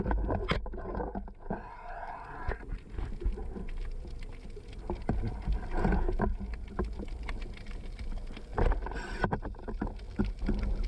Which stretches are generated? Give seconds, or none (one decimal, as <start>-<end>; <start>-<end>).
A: none